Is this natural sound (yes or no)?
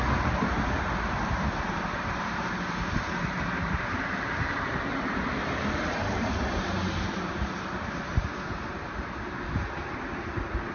no